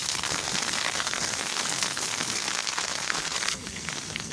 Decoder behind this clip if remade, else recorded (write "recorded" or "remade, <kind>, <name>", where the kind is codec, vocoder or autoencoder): remade, codec, SNAC